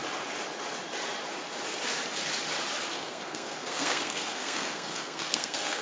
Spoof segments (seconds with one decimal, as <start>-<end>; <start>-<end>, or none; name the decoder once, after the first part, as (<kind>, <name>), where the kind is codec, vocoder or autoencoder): 2.9-5.8 (codec, SNAC)

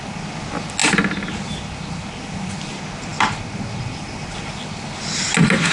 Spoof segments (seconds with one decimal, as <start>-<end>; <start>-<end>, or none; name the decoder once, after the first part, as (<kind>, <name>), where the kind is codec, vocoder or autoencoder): none

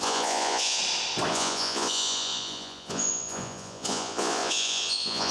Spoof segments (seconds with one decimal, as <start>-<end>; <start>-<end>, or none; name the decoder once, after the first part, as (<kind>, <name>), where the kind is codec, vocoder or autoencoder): 0.0-0.8 (vocoder, Vocos); 1.3-5.3

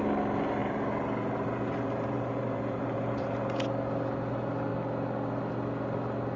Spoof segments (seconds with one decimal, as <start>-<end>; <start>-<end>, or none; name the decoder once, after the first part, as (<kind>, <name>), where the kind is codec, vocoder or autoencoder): 0.6-3.6 (vocoder, BigVGAN v2)

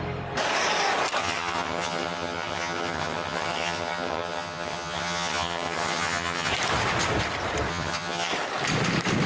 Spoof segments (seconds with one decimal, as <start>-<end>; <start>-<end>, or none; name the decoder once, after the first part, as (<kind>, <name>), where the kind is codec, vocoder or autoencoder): 1.2-6.5 (vocoder, HiFi-GAN); 7.7-8.3